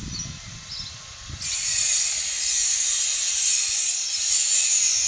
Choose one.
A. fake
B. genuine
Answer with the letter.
B